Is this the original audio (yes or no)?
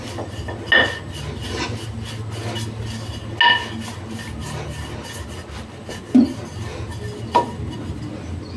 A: yes